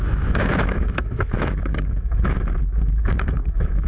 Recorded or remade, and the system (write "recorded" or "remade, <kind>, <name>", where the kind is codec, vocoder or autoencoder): remade, autoencoder, DAC-VAE